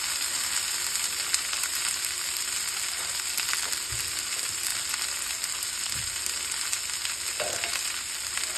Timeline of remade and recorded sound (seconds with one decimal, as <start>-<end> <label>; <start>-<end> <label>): 0.0-8.6 recorded